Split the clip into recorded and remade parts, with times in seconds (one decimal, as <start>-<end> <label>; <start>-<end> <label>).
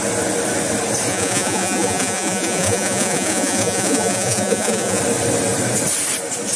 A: 0.0-1.1 recorded; 1.1-5.0 remade; 5.0-6.6 recorded